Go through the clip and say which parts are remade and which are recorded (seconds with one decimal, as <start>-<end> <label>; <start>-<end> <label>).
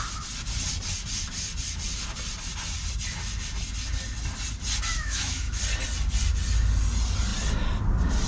0.0-4.9 recorded; 4.9-5.6 remade; 5.6-8.3 recorded